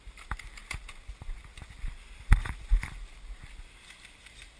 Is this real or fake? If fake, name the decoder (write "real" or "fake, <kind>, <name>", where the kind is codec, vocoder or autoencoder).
real